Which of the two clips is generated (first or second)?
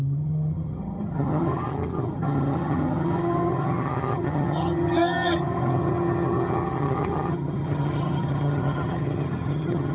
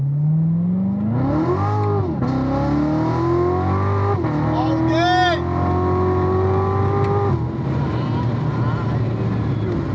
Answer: first